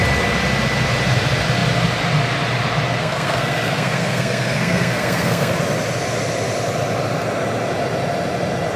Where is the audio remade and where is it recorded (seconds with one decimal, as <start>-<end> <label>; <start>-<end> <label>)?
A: 0.0-3.0 recorded; 3.0-5.5 remade; 5.5-8.8 recorded